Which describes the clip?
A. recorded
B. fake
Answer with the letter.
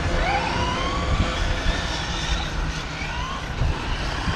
A